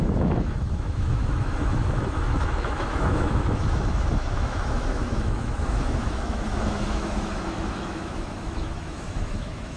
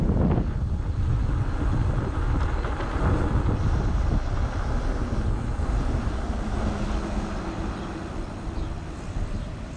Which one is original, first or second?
second